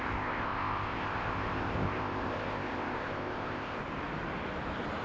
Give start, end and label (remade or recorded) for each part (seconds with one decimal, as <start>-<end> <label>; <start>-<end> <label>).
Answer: 0.0-3.8 remade; 3.8-5.0 recorded